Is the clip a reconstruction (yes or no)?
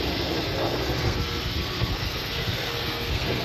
yes